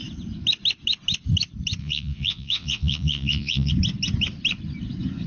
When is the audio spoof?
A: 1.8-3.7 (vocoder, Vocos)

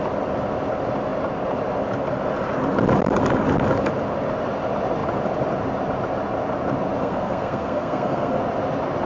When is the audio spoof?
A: 7.0-8.4 (codec, SNAC)

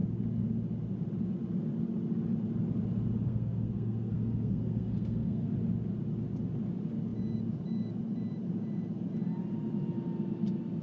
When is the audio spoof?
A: 3.3-5.5 (codec, SNAC)

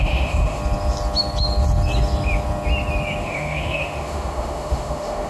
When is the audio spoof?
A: 0.0-0.6 (autoencoder, DAC-VAE); 3.2-5.3